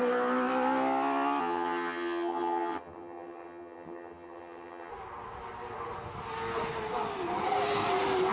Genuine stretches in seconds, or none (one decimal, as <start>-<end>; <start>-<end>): 0.0-1.4; 4.9-8.3

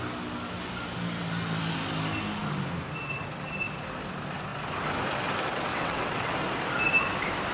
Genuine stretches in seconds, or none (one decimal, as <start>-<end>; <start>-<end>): 0.0-5.7; 6.3-7.5